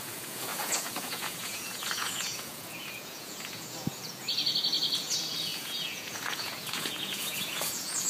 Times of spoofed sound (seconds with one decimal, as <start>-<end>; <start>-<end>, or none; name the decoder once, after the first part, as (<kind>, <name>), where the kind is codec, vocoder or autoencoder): 0.0-8.1 (vocoder, Vocos)